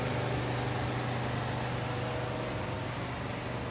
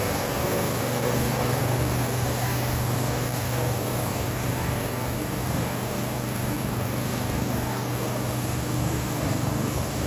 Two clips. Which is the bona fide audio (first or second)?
first